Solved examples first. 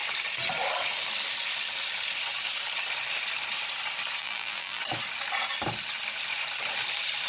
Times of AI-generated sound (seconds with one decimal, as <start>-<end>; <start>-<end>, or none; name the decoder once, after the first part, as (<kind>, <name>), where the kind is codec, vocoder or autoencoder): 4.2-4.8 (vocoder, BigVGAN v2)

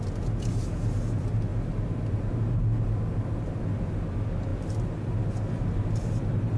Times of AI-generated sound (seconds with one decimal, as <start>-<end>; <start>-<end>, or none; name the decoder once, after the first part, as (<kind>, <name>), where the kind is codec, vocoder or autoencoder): none

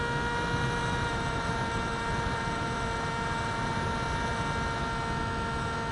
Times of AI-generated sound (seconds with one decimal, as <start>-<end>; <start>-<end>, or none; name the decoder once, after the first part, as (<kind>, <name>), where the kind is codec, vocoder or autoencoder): 0.8-4.3 (vocoder, BigVGAN v2)

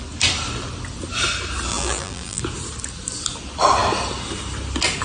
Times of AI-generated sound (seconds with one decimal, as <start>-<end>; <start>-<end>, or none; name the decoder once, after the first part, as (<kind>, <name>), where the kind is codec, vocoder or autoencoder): 1.7-2.4 (vocoder, BigVGAN v2)

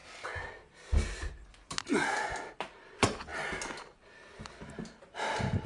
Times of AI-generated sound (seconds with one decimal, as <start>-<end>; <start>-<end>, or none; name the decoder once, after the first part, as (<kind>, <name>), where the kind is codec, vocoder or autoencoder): 2.4-3.3 (vocoder, BigVGAN v2); 3.8-5.7